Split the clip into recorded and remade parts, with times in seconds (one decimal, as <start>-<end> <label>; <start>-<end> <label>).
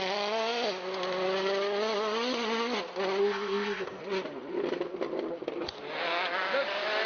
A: 0.0-3.2 recorded; 3.2-4.0 remade; 4.0-7.1 recorded